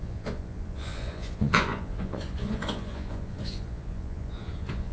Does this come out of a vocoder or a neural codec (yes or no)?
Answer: yes